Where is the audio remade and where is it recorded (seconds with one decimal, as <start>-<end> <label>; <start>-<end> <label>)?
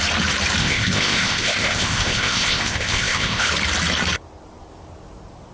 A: 0.0-0.6 recorded; 0.6-3.5 remade; 3.5-5.5 recorded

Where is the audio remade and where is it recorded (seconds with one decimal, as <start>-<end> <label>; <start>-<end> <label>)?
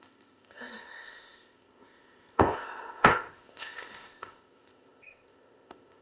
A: 0.0-6.0 remade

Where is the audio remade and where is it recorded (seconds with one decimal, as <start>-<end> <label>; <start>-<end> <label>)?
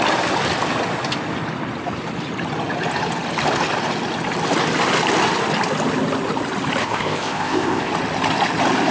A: 0.0-6.8 recorded; 6.8-7.9 remade; 7.9-8.9 recorded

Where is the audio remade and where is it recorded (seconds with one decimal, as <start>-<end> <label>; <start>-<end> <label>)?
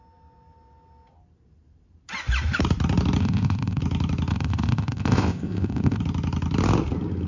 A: 0.0-3.2 recorded; 3.2-3.8 remade; 3.8-4.3 recorded; 4.3-6.0 remade; 6.0-7.3 recorded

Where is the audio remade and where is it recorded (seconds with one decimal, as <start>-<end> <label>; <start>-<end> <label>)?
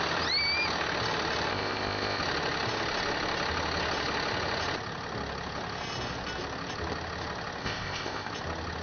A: 0.0-1.5 recorded; 1.5-2.2 remade; 2.2-7.6 recorded; 7.6-8.3 remade; 8.3-8.8 recorded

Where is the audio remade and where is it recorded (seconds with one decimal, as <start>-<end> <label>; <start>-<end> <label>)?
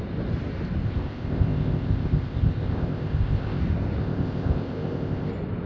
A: 0.0-0.8 recorded; 0.8-3.6 remade; 3.6-4.0 recorded; 4.0-5.3 remade; 5.3-5.7 recorded